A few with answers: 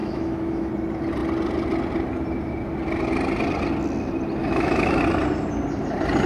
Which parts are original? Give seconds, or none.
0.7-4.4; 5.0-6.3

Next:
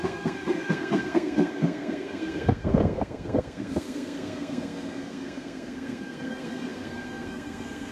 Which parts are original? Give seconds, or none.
none

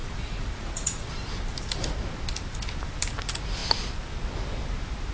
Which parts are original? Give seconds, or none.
1.1-5.1

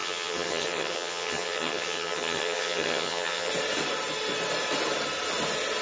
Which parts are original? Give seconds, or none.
3.5-5.8